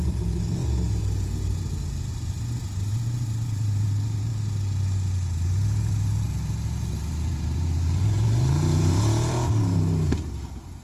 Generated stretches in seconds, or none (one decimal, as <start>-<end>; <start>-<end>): 0.0-0.6; 2.1-4.3; 7.1-10.8